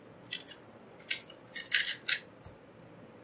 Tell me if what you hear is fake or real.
real